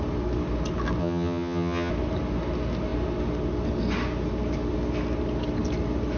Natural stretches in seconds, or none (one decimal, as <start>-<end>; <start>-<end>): 0.0-1.0; 1.9-6.2